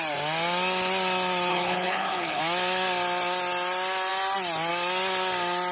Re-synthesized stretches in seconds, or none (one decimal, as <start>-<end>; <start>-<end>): 1.5-2.4

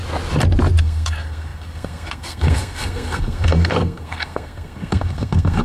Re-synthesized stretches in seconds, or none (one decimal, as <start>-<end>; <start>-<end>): 0.8-5.6

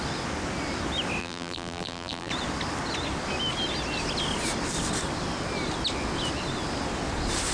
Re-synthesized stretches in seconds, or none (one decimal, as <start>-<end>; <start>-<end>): 1.2-2.3

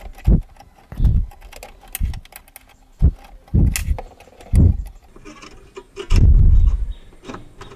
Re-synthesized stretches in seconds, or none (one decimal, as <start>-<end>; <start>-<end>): none

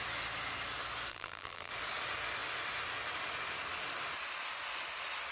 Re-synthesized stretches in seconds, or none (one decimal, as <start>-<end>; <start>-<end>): 1.1-1.7

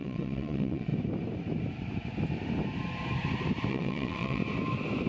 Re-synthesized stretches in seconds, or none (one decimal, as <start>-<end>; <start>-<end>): 0.0-0.9; 3.7-4.4

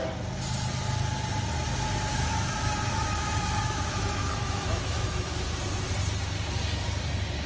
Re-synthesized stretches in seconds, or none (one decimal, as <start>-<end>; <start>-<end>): 2.1-5.4

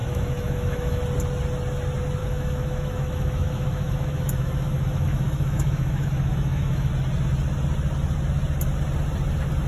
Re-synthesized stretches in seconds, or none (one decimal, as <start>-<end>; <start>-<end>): 0.0-1.0; 2.2-6.9